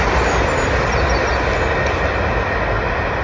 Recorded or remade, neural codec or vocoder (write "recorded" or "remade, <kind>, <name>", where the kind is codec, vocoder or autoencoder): recorded